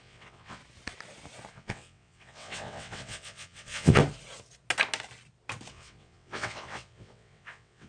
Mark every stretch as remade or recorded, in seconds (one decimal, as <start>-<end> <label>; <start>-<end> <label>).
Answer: 0.0-0.6 remade; 0.6-1.5 recorded; 1.5-4.0 remade; 4.0-5.7 recorded; 5.7-7.9 remade